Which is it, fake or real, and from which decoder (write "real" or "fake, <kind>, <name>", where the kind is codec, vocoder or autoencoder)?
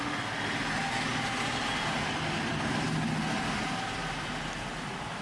real